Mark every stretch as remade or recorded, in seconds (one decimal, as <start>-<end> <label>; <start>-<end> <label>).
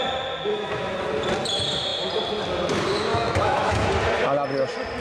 0.0-0.5 recorded; 0.5-1.0 remade; 1.0-3.1 recorded; 3.1-3.9 remade; 3.9-5.0 recorded